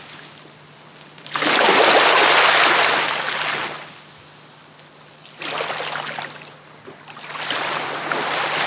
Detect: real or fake real